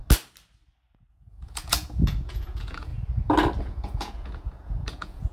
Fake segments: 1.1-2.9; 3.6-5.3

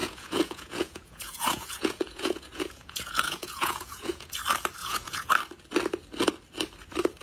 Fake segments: 0.0-4.3; 4.8-5.3

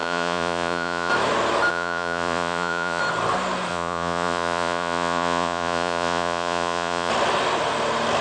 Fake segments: 0.0-1.1; 1.7-3.0; 3.7-7.1

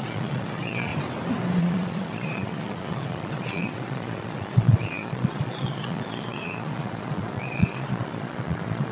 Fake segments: 0.0-0.9; 1.6-8.9

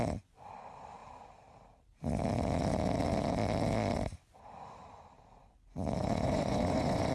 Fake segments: 6.0-7.1

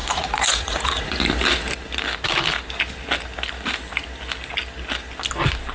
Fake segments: 0.0-1.2

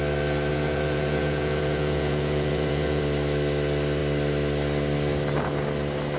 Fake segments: 0.5-3.0